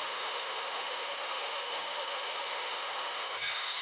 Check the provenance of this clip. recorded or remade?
remade